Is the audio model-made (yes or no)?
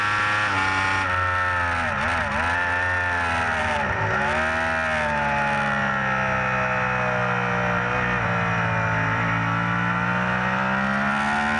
no